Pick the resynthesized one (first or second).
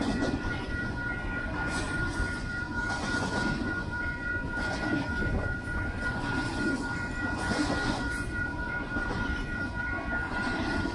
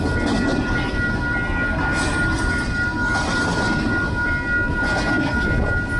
first